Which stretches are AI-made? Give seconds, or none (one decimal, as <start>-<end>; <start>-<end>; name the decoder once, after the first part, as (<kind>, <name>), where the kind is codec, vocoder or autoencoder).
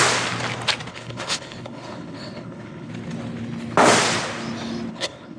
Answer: 0.9-2.9 (codec, HILCodec); 4.9-5.4